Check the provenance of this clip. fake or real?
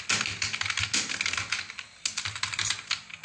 real